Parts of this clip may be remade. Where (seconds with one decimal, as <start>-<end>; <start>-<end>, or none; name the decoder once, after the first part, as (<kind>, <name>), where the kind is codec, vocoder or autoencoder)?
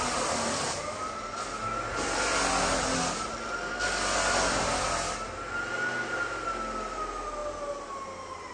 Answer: none